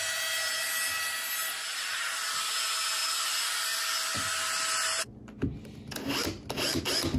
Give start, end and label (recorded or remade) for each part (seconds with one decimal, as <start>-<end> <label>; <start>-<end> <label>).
0.0-7.2 recorded